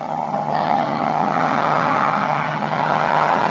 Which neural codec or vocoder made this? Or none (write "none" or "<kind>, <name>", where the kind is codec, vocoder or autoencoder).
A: vocoder, HiFi-GAN